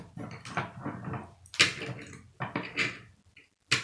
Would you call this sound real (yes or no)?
yes